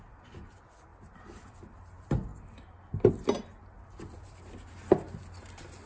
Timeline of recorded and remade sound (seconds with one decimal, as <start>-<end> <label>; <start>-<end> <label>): 0.0-5.9 recorded